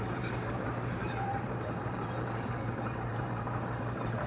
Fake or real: fake